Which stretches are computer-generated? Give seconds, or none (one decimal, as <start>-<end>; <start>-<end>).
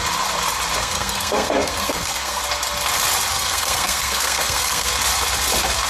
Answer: 0.8-2.4; 3.3-4.9